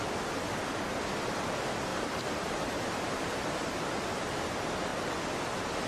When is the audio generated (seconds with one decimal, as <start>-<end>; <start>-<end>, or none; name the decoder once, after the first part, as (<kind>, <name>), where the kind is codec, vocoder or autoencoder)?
1.9-3.7 (vocoder, BigVGAN v2)